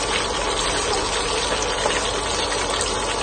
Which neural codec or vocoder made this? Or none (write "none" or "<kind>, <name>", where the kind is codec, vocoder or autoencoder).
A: none